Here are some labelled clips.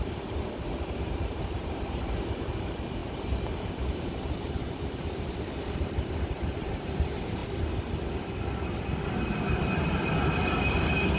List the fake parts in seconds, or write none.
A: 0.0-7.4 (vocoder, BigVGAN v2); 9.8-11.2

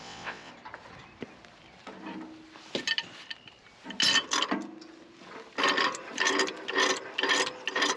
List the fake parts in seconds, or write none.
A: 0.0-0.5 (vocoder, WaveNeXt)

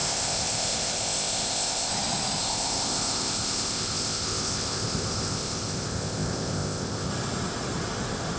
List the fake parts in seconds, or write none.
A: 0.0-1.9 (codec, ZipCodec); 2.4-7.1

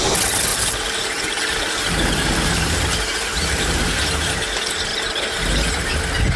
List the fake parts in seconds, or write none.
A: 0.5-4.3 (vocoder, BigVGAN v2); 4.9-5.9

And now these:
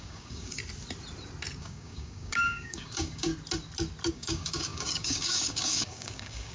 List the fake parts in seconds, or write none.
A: 0.0-0.6 (codec, DAC); 1.6-3.3; 4.1-6.5

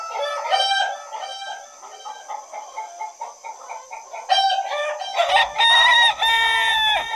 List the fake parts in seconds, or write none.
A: none

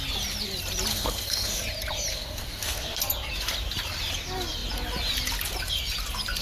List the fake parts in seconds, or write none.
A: 0.9-1.6 (codec, SNAC); 2.1-3.0

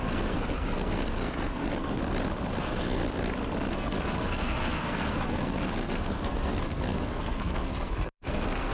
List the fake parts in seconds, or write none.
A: 0.0-2.0 (codec, SNAC); 2.6-3.0; 3.7-8.7